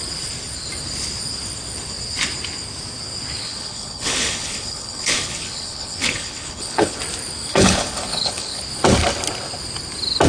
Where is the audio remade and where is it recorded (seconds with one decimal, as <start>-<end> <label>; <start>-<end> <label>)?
0.0-3.4 recorded; 3.4-7.0 remade; 7.0-7.5 recorded; 7.5-8.6 remade; 8.6-10.3 recorded